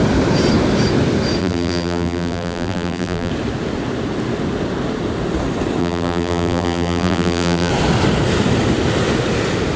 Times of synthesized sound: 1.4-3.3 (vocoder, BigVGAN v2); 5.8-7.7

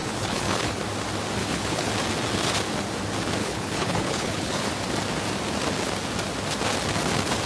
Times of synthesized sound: 0.0-0.8 (codec, HILCodec); 1.4-1.9; 3.4-4.7

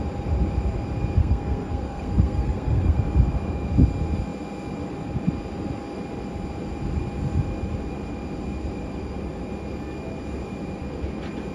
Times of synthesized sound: 1.2-3.0 (codec, SNAC)

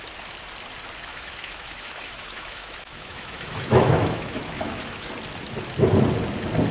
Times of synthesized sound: 1.1-5.1 (autoencoder, DAC-VAE)

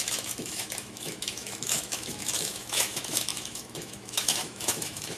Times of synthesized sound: 0.0-5.2 (autoencoder, DAC-VAE)

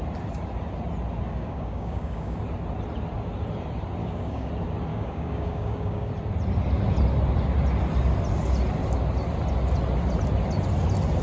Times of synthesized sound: 1.3-2.4 (codec, DAC); 4.0-4.5; 4.9-6.1

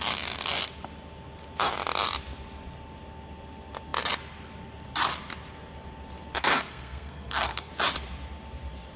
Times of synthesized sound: 6.4-7.7 (codec, SNAC)

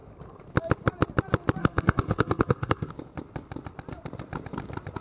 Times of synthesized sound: 1.6-2.9 (codec, SNAC)